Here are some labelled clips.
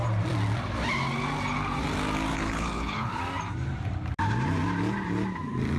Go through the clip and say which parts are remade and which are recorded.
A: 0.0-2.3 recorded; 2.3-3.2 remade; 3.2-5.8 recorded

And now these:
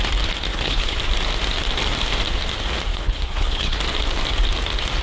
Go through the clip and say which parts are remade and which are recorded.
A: 0.0-0.5 recorded; 0.5-1.0 remade; 1.0-2.9 recorded; 2.9-3.8 remade; 3.8-5.0 recorded

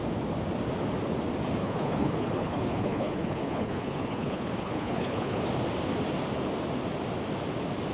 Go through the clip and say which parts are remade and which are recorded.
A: 0.0-1.6 recorded; 1.6-5.4 remade; 5.4-7.9 recorded

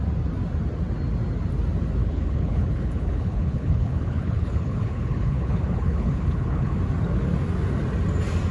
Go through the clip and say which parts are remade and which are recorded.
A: 0.0-2.0 recorded; 2.0-6.8 remade; 6.8-8.5 recorded

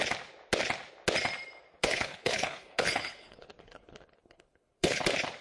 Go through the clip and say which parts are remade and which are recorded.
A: 0.0-1.8 recorded; 1.8-5.0 remade; 5.0-5.4 recorded

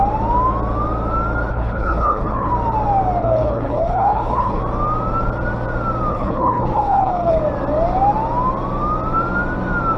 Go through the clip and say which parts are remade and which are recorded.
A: 0.0-1.5 recorded; 1.5-2.5 remade; 2.5-3.2 recorded; 3.2-4.6 remade; 4.6-6.1 recorded; 6.1-7.4 remade; 7.4-10.0 recorded